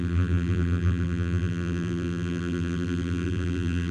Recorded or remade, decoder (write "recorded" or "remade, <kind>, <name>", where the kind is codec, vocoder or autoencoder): remade, vocoder, BigVGAN v2